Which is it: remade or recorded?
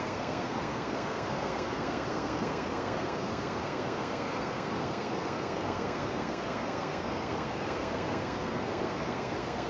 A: remade